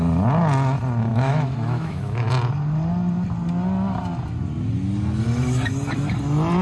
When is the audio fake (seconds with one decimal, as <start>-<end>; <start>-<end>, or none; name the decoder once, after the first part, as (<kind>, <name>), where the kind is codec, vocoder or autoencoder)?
1.1-2.3 (autoencoder, DAC-VAE)